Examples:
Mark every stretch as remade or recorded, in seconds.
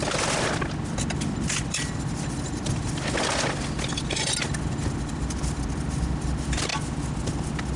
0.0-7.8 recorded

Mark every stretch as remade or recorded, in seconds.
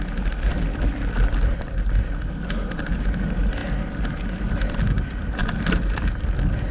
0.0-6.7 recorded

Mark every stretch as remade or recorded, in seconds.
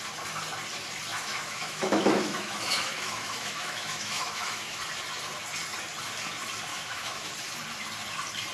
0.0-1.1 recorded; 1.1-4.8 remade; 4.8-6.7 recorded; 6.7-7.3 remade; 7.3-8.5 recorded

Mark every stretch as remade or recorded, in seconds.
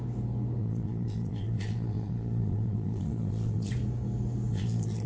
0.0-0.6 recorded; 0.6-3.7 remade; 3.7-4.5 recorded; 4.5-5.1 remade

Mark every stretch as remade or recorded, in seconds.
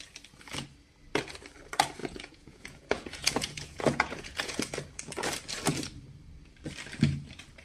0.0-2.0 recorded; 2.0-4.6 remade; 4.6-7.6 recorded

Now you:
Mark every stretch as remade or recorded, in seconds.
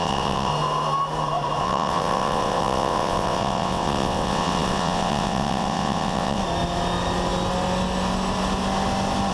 0.0-0.5 remade; 0.5-1.6 recorded; 1.6-6.4 remade; 6.4-9.3 recorded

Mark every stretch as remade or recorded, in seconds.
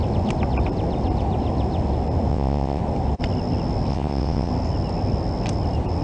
0.0-2.3 recorded; 2.3-2.8 remade; 2.8-3.9 recorded; 3.9-4.5 remade; 4.5-6.0 recorded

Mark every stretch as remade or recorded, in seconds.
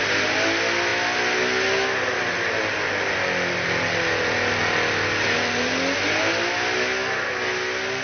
0.0-8.0 recorded